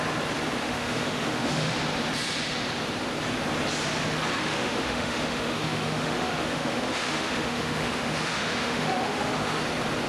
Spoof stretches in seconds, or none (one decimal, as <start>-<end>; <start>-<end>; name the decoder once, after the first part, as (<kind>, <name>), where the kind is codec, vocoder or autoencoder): 0.6-1.7 (autoencoder, DAC-VAE); 4.4-9.6